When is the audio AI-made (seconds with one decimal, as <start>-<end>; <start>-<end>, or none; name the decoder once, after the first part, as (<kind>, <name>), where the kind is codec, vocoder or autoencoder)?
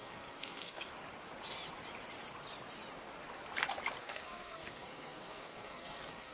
0.0-0.9 (codec, SNAC); 4.0-6.3